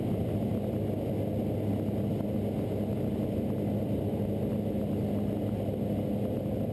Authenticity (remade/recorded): recorded